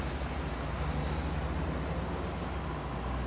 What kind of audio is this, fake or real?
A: real